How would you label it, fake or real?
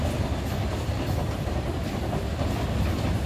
real